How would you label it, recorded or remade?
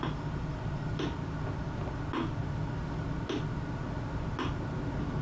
recorded